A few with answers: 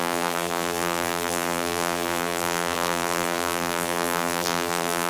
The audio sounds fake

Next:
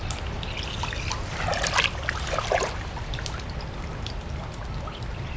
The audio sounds real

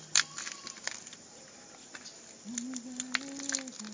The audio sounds real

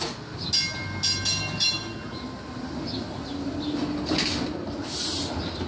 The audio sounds real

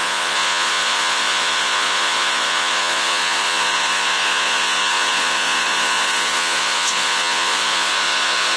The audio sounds fake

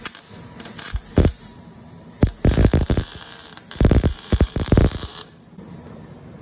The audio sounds fake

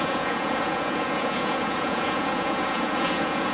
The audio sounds fake